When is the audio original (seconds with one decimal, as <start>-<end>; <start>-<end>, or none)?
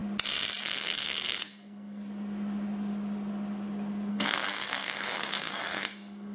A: 0.0-0.6; 2.0-4.1